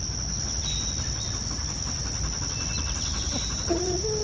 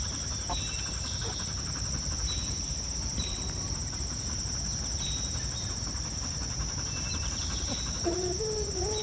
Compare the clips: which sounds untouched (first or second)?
first